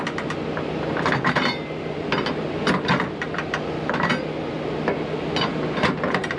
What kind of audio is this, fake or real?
real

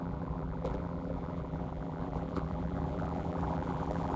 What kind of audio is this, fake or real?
fake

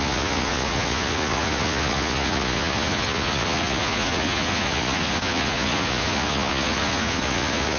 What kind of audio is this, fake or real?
fake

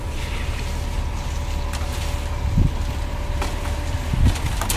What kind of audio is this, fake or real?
real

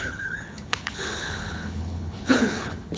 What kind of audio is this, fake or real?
fake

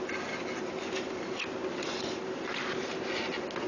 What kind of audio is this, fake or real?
real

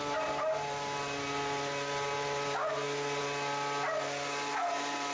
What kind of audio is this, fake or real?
real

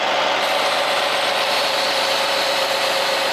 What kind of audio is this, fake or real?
real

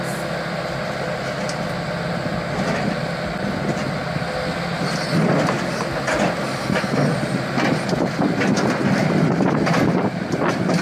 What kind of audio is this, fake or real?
real